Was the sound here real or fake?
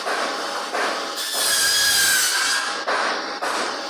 real